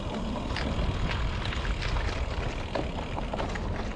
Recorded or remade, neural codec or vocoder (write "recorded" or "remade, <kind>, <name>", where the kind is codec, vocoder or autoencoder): recorded